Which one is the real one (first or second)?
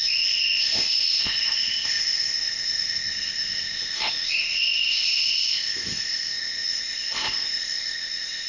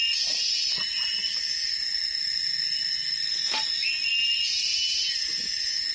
second